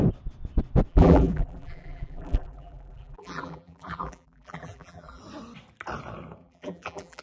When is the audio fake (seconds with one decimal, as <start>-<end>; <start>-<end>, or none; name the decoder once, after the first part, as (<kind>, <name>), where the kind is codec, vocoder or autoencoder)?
0.9-5.2 (vocoder, BigVGAN v2); 6.4-7.2

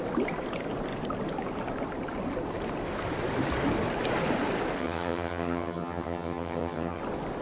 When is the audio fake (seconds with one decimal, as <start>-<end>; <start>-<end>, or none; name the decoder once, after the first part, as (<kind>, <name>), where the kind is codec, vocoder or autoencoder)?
4.8-7.0 (vocoder, HiFi-GAN)